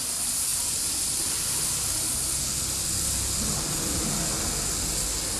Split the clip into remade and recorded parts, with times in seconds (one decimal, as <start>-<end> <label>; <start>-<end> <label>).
0.0-5.4 recorded